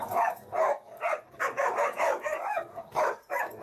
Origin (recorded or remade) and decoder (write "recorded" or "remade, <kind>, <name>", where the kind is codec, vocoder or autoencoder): remade, codec, DAC